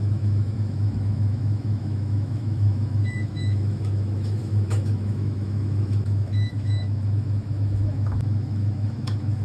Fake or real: fake